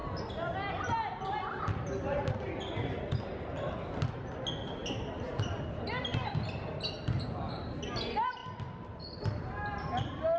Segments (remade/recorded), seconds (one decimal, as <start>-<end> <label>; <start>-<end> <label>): 0.0-10.4 recorded